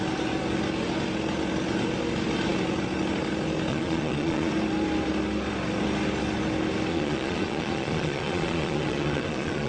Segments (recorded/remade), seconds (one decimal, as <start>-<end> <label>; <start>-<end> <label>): 0.0-3.7 recorded; 3.7-4.5 remade; 4.5-6.9 recorded; 6.9-9.7 remade